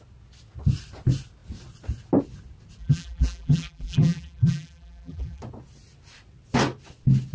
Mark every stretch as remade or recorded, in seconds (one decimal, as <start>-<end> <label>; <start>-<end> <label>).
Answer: 0.0-2.8 recorded; 2.8-5.4 remade; 5.4-7.3 recorded